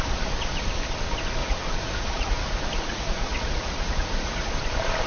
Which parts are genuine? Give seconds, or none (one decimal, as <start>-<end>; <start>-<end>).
0.0-1.4; 4.5-5.1